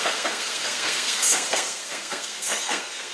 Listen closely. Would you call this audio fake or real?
fake